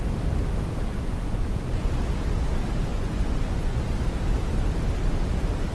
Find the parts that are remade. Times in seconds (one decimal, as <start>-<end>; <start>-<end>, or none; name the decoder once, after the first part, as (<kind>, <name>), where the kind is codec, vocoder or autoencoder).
1.0-1.9 (vocoder, Vocos); 2.9-3.8